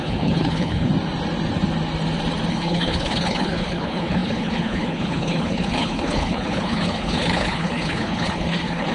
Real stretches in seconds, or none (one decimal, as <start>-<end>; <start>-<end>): 0.9-2.5